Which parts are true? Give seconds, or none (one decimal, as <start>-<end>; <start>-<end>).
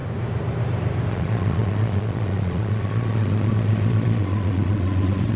0.0-1.1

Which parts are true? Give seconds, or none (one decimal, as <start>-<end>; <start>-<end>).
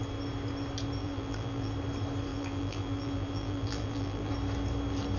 0.0-1.0; 1.7-2.3; 4.3-5.2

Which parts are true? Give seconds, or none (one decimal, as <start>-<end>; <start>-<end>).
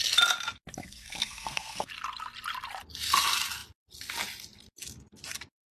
0.0-0.8; 1.9-5.7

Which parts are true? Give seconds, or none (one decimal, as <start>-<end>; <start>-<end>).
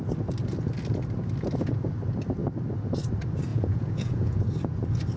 0.0-3.5; 4.4-5.2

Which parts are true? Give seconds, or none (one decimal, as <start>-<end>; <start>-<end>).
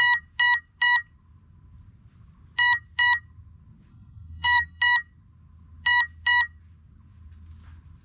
0.0-3.9; 4.8-8.0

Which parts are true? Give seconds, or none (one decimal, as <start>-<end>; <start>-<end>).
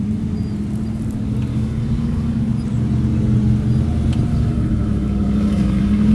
0.0-1.5; 2.5-4.3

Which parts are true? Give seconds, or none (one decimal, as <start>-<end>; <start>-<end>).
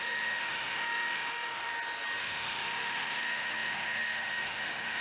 1.7-2.2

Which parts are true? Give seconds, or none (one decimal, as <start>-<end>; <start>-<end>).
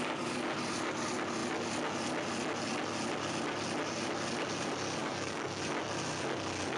0.0-5.0; 5.6-6.8